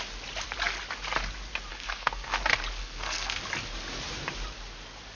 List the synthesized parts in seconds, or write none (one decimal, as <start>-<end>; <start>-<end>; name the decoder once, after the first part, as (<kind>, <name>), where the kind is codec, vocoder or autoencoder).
1.7-2.4 (codec, SNAC); 2.8-3.4